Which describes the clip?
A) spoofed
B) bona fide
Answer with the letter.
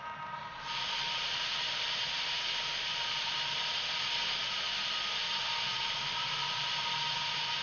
B